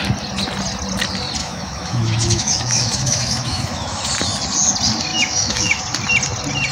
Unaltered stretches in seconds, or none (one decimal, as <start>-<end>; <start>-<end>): 0.0-1.4; 4.0-5.1; 5.8-6.7